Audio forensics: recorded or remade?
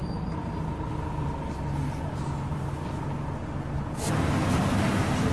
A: recorded